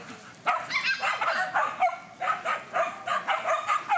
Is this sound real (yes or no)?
yes